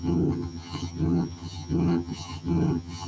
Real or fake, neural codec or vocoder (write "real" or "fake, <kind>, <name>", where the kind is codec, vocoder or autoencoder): fake, vocoder, HiFi-GAN